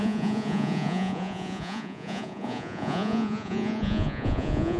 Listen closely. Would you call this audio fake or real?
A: fake